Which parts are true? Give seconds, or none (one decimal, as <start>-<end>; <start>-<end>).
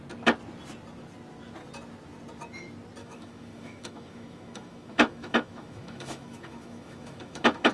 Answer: 0.0-3.0